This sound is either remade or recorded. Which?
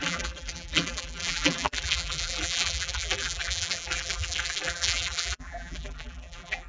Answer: remade